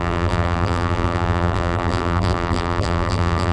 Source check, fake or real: fake